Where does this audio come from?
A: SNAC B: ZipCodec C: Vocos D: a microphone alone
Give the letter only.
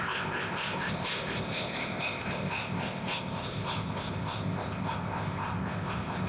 B